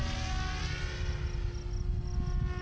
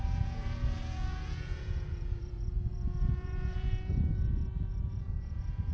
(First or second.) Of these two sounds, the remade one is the second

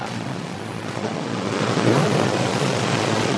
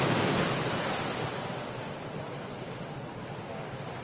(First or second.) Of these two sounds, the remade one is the first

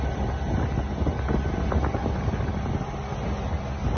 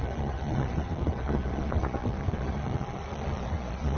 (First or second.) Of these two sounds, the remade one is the second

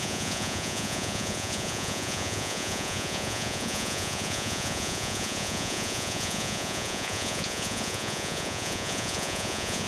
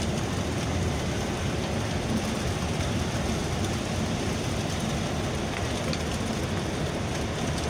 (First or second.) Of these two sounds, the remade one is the first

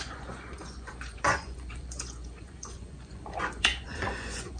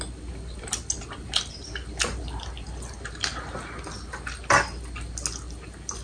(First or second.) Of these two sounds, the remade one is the first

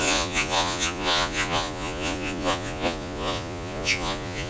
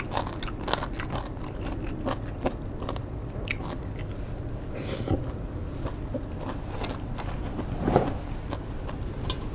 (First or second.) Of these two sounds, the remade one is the first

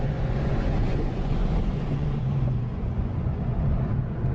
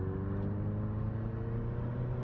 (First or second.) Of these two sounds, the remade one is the first